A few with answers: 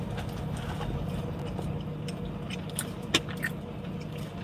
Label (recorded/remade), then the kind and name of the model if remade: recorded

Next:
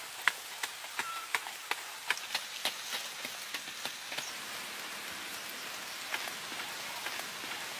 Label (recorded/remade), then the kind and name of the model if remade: recorded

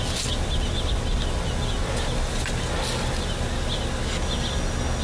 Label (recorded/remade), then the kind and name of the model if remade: recorded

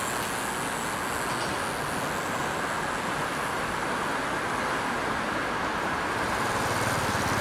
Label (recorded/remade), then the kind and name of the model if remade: recorded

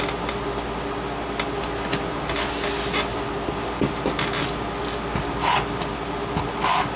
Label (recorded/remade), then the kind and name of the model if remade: recorded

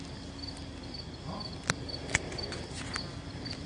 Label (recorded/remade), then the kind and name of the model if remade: recorded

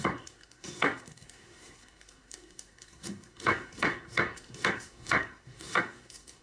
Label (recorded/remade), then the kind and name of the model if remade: remade, codec, SNAC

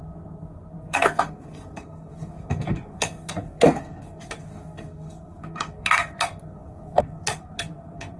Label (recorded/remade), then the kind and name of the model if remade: remade, codec, SNAC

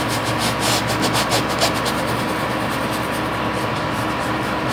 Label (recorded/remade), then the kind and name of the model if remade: recorded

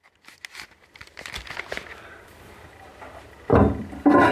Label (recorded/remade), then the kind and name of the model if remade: recorded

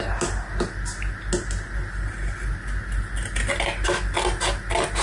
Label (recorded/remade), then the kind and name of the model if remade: recorded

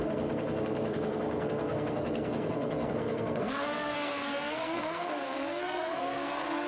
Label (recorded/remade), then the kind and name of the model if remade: remade, codec, SNAC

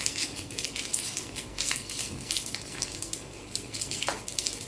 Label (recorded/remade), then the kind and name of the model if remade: remade, codec, SNAC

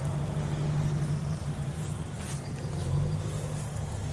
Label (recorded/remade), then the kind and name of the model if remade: recorded